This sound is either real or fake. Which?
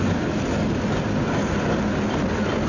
real